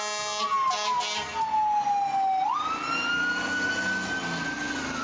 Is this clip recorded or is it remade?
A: recorded